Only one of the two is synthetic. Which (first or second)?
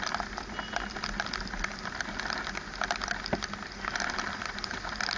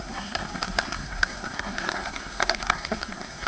second